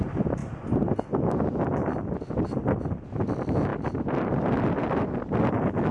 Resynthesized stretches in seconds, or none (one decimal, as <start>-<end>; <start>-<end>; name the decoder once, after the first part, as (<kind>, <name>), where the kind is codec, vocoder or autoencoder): none